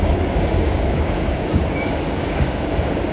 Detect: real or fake fake